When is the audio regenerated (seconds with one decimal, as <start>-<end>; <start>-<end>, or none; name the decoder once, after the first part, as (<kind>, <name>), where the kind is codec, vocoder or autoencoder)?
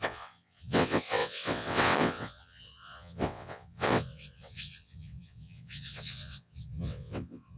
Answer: 0.0-7.6 (vocoder, WaveNeXt)